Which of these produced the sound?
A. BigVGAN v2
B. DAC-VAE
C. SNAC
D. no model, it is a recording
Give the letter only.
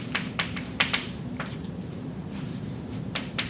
A